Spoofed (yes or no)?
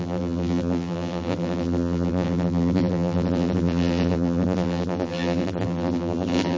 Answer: yes